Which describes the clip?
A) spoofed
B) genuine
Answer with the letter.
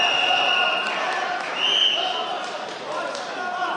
B